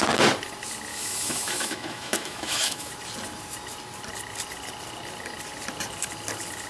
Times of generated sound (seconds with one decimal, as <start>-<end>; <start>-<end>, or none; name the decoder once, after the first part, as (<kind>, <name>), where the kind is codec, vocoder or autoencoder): 0.9-2.9 (autoencoder, DAC-VAE)